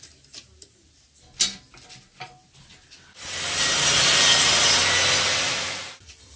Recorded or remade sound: recorded